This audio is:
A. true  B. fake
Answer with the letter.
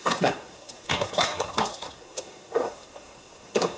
B